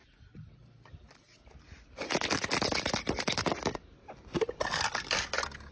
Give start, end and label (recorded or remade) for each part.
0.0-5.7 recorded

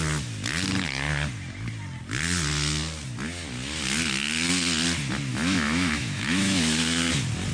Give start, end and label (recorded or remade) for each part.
0.0-5.3 recorded; 5.3-7.1 remade; 7.1-7.5 recorded

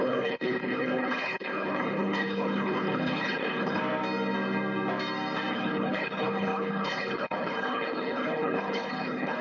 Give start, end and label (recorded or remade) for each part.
0.0-3.8 remade; 3.8-5.5 recorded; 5.5-9.4 remade

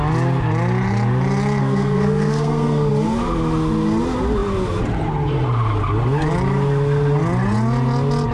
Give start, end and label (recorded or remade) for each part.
0.0-1.6 recorded; 1.6-2.9 remade; 2.9-8.3 recorded